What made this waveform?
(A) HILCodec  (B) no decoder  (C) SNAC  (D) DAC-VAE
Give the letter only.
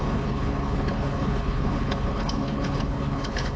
A